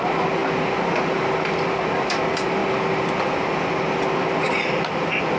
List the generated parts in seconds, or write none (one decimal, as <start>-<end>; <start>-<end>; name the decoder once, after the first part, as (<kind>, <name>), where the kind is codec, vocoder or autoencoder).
none